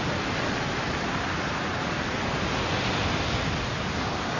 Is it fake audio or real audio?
real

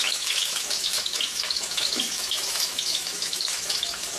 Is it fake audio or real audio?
fake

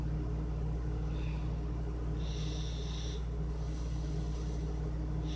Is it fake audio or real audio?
real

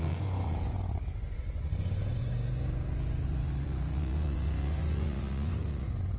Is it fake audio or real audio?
fake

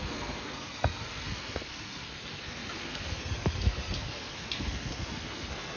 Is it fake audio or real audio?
fake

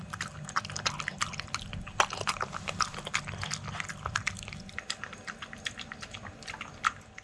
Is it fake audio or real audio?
real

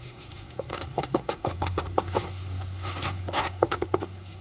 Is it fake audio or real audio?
fake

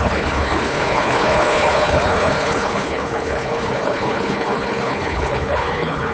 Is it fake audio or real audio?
fake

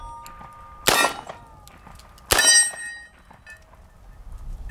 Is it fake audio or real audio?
real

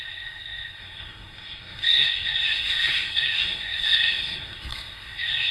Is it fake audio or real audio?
fake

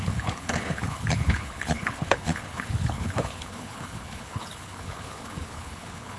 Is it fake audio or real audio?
fake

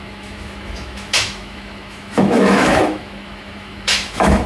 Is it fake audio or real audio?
fake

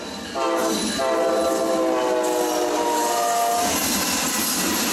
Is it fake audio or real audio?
real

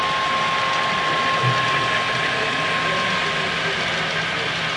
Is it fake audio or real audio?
real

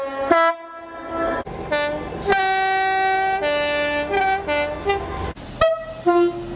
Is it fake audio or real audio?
real